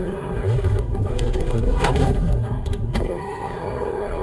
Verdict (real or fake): fake